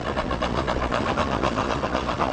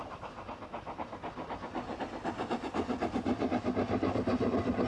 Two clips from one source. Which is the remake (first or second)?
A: first